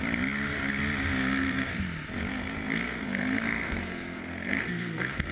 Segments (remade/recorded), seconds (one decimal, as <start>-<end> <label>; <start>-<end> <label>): 0.0-1.2 recorded; 1.2-1.7 remade; 1.7-2.3 recorded; 2.3-5.3 remade